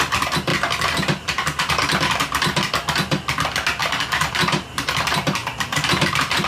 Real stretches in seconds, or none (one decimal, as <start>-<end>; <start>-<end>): 0.0-0.5; 2.0-3.8; 4.9-5.4